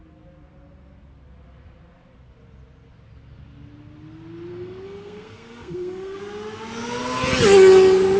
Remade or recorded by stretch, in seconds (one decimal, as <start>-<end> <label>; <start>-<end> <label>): 0.0-4.5 recorded; 4.5-6.2 remade; 6.2-8.2 recorded